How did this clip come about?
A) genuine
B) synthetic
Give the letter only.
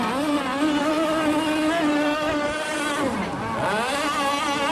A